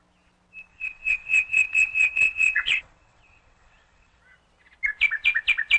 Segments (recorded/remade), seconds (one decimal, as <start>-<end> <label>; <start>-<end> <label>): 0.0-0.7 recorded; 0.7-4.2 remade; 4.2-5.8 recorded